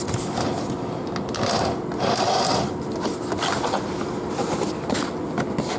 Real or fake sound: real